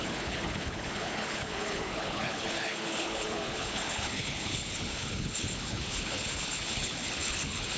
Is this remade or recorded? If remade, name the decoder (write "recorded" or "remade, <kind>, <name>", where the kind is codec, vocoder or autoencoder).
remade, codec, HILCodec